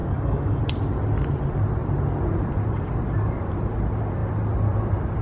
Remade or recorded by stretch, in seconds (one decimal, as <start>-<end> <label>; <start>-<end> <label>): 0.0-0.6 remade; 0.6-5.2 recorded